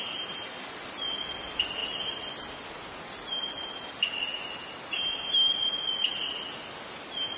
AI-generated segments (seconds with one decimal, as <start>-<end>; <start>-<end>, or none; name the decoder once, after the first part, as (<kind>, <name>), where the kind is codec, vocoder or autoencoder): none